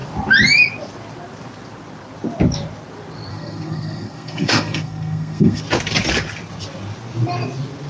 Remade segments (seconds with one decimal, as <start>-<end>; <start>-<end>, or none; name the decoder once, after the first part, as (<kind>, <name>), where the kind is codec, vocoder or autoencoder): 3.3-5.6 (codec, SNAC)